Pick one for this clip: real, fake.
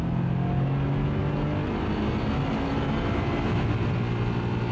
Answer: real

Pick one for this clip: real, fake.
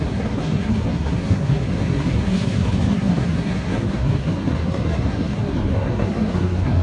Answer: fake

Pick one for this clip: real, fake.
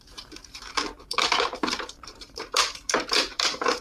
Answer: fake